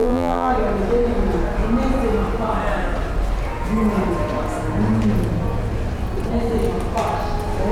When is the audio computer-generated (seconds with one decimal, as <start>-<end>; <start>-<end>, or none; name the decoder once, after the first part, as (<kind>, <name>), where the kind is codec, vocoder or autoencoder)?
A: 0.0-0.5 (vocoder, BigVGAN v2)